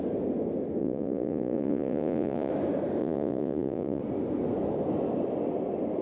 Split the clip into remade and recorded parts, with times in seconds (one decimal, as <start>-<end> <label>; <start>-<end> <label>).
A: 0.0-0.8 recorded; 0.8-2.5 remade; 2.5-3.0 recorded; 3.0-4.0 remade; 4.0-6.0 recorded